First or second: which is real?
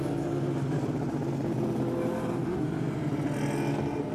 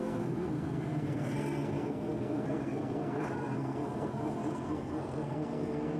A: first